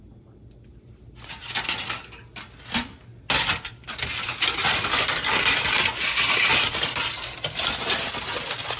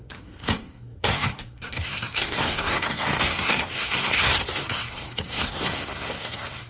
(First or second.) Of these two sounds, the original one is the first